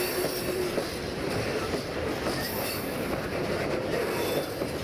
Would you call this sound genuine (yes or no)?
no